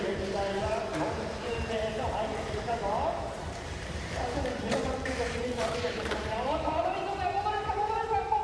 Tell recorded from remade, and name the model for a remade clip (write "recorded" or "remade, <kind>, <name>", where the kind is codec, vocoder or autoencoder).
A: remade, vocoder, BigVGAN v2